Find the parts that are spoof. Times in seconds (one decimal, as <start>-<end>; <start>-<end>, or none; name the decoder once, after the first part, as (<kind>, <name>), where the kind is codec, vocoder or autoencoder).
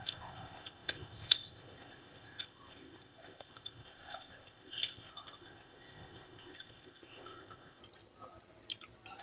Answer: 0.0-7.8 (codec, ZipCodec)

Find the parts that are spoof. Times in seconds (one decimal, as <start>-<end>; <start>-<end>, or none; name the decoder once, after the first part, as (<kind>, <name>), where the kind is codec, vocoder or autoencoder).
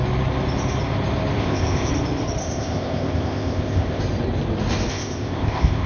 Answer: 1.4-1.9 (codec, ZipCodec); 2.4-4.0; 4.9-5.9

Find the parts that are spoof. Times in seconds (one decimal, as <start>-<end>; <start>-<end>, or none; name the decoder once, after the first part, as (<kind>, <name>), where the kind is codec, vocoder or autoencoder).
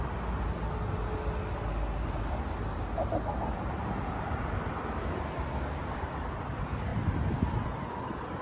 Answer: none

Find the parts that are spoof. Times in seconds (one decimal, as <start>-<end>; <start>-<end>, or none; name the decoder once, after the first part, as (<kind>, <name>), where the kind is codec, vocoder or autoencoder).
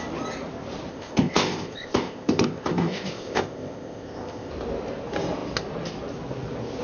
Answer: 0.9-4.5 (codec, ZipCodec)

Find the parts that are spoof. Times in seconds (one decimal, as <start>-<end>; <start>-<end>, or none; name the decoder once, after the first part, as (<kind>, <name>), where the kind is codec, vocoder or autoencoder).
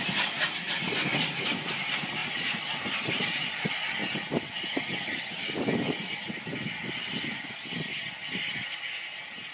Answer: none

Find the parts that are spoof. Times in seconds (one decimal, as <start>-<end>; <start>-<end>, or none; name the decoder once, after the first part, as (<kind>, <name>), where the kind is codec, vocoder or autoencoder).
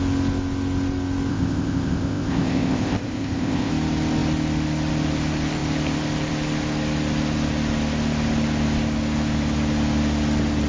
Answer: 1.3-3.7 (codec, ZipCodec)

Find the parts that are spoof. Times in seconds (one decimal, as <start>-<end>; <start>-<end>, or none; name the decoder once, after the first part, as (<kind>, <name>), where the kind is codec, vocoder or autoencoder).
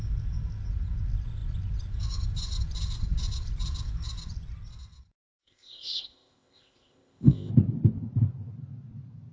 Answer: 5.4-7.5 (codec, ZipCodec)